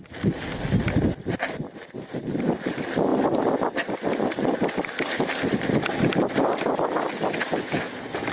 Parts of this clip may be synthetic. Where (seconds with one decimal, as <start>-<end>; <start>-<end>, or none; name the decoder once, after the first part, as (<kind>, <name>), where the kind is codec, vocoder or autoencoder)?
none